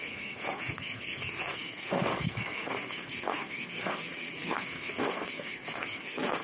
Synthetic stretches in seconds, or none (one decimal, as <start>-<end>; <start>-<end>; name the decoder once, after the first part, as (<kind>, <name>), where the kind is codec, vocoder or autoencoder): 0.0-6.4 (codec, SNAC)